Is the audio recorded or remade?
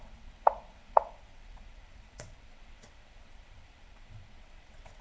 remade